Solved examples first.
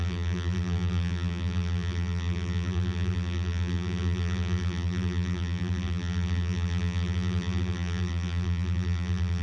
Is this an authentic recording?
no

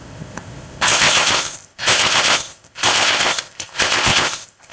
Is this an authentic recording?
no